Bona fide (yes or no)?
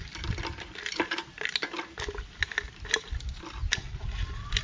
yes